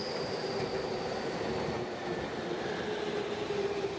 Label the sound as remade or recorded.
recorded